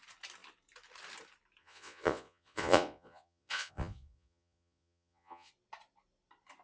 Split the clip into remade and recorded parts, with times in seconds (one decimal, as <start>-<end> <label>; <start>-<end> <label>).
0.0-1.6 recorded; 1.6-5.5 remade; 5.5-6.6 recorded